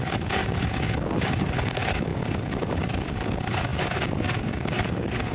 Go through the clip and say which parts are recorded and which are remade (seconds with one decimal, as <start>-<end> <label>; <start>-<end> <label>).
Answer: 0.0-5.3 remade